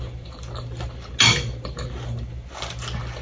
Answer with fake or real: real